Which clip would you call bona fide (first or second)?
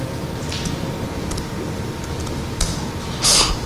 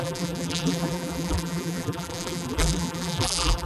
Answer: first